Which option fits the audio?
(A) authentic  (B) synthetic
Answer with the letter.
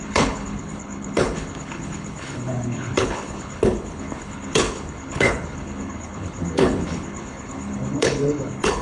B